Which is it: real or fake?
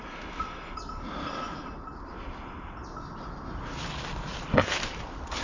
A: real